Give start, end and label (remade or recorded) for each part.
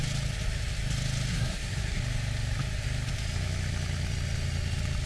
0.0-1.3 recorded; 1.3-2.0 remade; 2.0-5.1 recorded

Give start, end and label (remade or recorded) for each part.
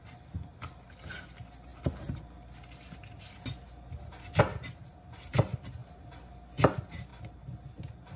0.0-8.2 recorded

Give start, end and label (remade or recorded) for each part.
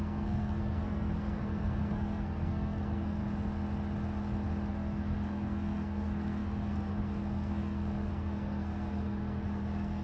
0.0-3.2 remade; 3.2-4.7 recorded; 4.7-10.0 remade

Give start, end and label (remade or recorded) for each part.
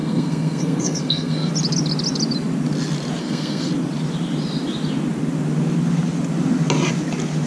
0.0-1.5 remade; 1.5-3.2 recorded; 3.2-3.7 remade; 3.7-7.5 recorded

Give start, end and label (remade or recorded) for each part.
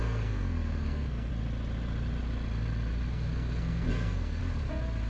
0.0-1.3 remade; 1.3-3.1 recorded; 3.1-4.4 remade; 4.4-5.1 recorded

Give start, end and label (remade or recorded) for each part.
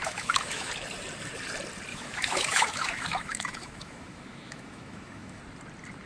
0.0-0.7 remade; 0.7-1.9 recorded; 1.9-5.4 remade; 5.4-6.1 recorded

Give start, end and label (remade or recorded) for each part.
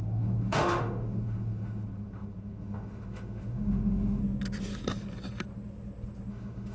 0.0-4.2 remade; 4.2-6.3 recorded; 6.3-6.7 remade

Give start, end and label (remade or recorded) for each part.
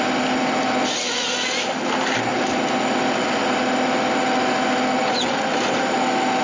0.0-6.4 recorded